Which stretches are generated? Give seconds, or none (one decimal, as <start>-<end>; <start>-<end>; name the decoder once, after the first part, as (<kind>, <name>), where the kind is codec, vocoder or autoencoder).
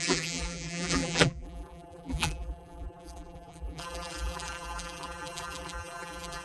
0.0-6.4 (vocoder, BigVGAN v2)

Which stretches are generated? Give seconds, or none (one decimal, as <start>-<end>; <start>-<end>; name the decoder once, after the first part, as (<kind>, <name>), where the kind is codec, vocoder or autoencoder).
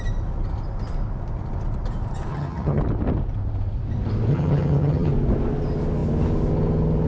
2.3-2.8 (vocoder, HiFi-GAN); 4.3-5.1